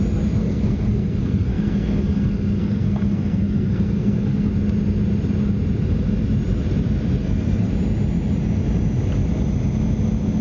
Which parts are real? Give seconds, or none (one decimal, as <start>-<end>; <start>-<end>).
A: 0.0-0.4; 4.5-7.2; 7.7-10.4